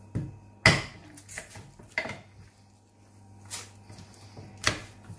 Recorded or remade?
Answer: recorded